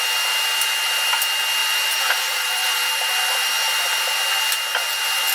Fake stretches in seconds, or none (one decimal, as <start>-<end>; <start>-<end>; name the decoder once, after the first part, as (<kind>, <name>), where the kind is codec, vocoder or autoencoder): 1.6-2.9 (vocoder, BigVGAN v2)